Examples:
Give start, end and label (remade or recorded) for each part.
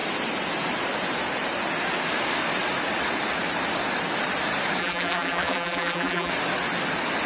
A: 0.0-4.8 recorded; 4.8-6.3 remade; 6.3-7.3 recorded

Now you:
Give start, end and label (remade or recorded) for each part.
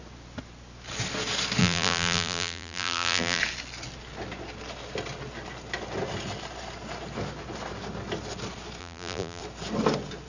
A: 0.0-1.6 recorded; 1.6-3.4 remade; 3.4-8.8 recorded; 8.8-9.4 remade; 9.4-10.3 recorded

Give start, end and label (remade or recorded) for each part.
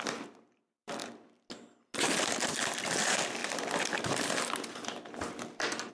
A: 0.0-1.0 remade; 1.0-2.2 recorded; 2.2-5.9 remade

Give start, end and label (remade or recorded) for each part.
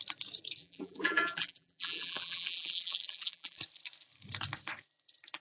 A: 0.0-0.6 recorded; 0.6-3.6 remade; 3.6-5.4 recorded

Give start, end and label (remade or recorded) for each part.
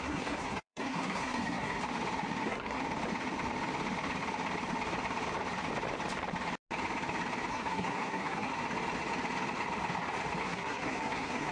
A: 0.0-1.8 remade; 1.8-2.4 recorded; 2.4-2.8 remade; 2.8-7.5 recorded; 7.5-8.5 remade; 8.5-10.4 recorded; 10.4-11.5 remade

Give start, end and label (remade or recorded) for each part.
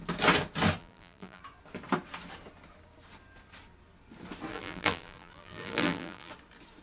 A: 0.0-0.8 recorded; 0.8-1.4 remade; 1.4-4.5 recorded; 4.5-6.3 remade; 6.3-6.8 recorded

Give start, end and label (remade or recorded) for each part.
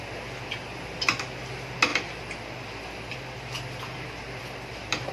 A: 0.0-1.9 recorded; 1.9-5.1 remade